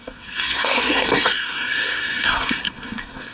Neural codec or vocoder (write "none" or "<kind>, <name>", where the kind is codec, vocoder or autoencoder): codec, SNAC